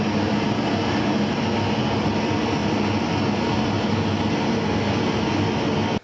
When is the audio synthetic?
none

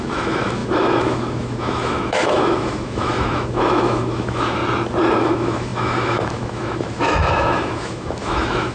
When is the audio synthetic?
0.0-4.6 (autoencoder, DAC-VAE); 5.2-8.7